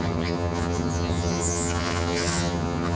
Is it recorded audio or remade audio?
remade